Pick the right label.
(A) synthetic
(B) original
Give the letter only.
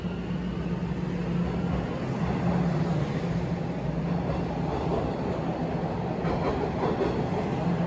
B